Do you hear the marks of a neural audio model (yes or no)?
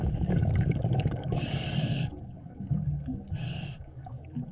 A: yes